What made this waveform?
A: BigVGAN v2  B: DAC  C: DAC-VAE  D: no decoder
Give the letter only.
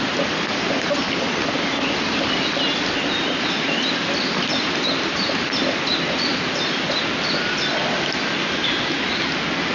D